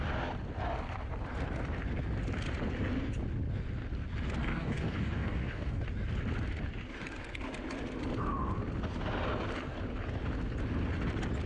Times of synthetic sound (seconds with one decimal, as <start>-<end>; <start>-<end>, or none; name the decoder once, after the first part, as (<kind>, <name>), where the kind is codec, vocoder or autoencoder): 4.4-5.8 (codec, DAC)